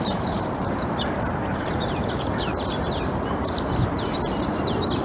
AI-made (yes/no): yes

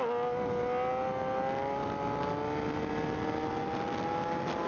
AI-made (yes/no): no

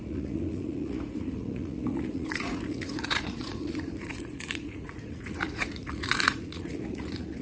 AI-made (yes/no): yes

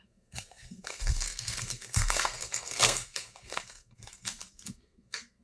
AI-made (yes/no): yes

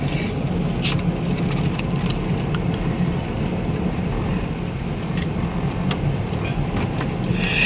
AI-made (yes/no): no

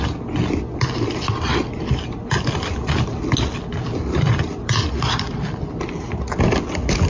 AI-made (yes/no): no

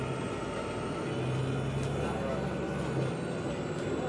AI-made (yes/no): no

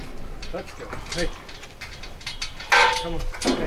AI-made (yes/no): no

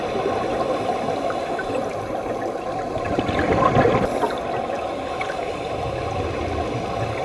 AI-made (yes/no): no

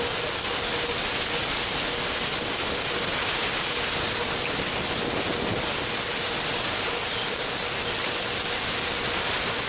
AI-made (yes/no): no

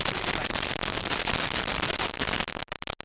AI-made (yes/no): no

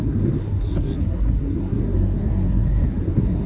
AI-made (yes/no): yes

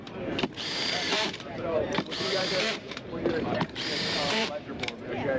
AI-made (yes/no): yes